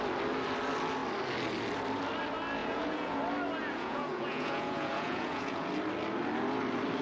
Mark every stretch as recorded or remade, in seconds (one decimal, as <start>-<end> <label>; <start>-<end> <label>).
0.0-2.6 recorded; 2.6-3.2 remade; 3.2-3.6 recorded; 3.6-5.7 remade; 5.7-7.0 recorded